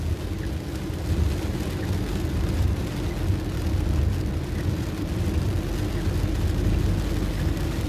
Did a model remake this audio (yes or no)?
no